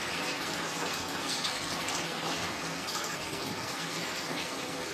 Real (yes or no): no